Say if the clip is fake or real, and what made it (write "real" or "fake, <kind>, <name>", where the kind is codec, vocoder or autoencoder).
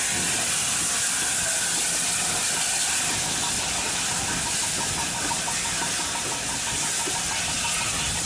real